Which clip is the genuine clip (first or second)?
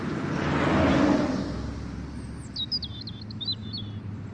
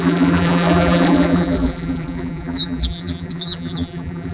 first